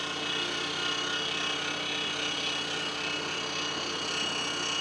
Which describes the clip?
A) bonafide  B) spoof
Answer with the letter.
A